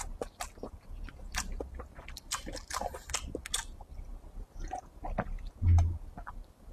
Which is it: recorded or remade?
recorded